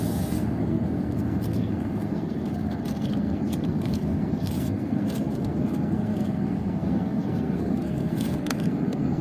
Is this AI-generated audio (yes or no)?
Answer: yes